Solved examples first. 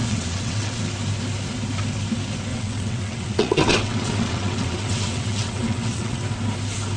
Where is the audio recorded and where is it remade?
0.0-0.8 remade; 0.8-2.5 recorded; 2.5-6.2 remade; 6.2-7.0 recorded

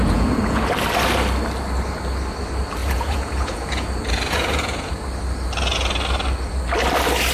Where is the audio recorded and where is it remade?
0.0-0.6 remade; 0.6-2.8 recorded; 2.8-4.9 remade; 4.9-7.3 recorded

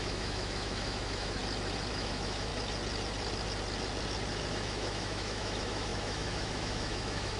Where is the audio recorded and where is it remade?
0.0-1.4 remade; 1.4-1.9 recorded; 1.9-2.5 remade; 2.5-4.5 recorded; 4.5-7.4 remade

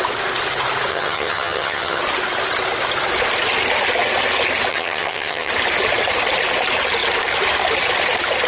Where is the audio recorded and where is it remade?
0.0-0.9 recorded; 0.9-2.0 remade; 2.0-4.7 recorded; 4.7-5.5 remade; 5.5-8.5 recorded

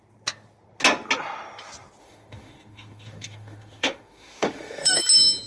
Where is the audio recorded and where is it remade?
0.0-2.0 recorded; 2.0-5.0 remade; 5.0-5.5 recorded